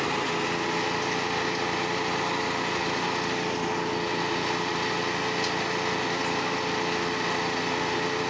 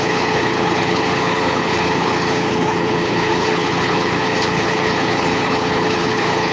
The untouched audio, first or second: first